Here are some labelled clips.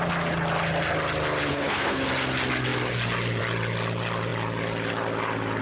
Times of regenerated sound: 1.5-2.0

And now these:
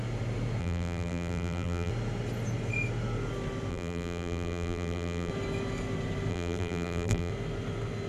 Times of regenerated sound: 0.6-1.9; 3.7-5.3; 6.3-7.3

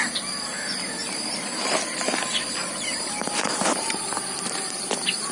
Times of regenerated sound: 1.0-1.7; 2.6-4.8

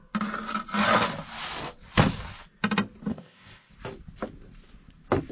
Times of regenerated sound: 3.1-3.7

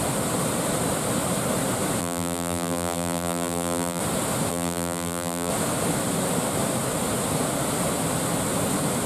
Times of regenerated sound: 2.0-4.0; 4.5-5.5

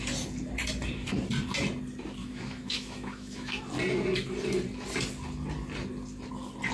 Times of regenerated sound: 2.2-3.6

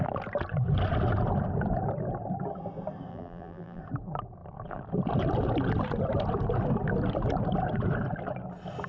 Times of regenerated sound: 3.1-3.8

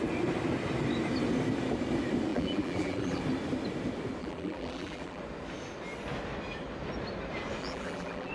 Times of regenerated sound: 2.3-3.2; 4.2-5.2; 7.6-8.3